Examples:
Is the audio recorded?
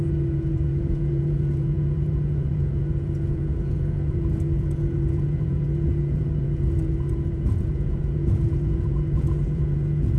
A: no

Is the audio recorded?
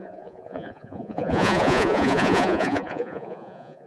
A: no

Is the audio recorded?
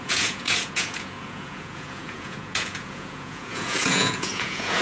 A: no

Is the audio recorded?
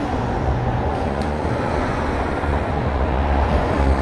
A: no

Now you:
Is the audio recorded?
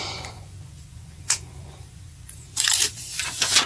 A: no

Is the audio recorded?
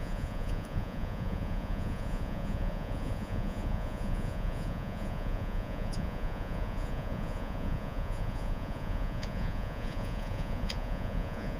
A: no